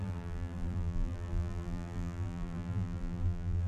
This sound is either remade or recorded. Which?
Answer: remade